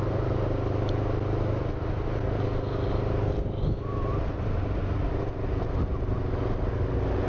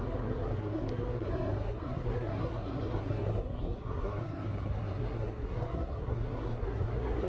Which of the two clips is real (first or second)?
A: first